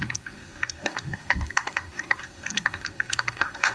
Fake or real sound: fake